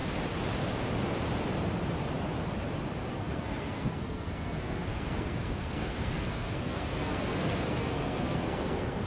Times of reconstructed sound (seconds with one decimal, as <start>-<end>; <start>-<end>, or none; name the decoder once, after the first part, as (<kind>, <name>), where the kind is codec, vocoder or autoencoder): 3.1-9.1 (codec, SNAC)